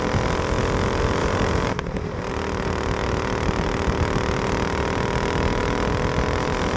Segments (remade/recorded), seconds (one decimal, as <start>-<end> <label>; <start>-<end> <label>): 0.0-1.2 recorded; 1.2-2.3 remade; 2.3-6.8 recorded